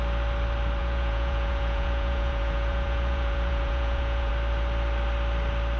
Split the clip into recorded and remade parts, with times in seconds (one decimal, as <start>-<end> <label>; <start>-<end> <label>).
0.0-0.8 recorded; 0.8-4.3 remade; 4.3-5.8 recorded